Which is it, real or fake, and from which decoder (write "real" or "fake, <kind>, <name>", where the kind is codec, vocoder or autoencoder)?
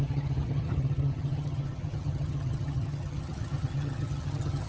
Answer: fake, vocoder, HiFi-GAN